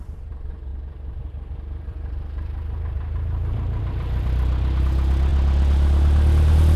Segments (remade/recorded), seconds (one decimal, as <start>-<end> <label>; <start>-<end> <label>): 0.0-5.3 remade; 5.3-6.8 recorded